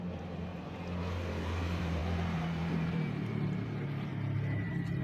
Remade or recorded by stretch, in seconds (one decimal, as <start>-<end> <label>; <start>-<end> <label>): 0.0-0.5 remade; 0.5-1.3 recorded; 1.3-4.1 remade; 4.1-5.0 recorded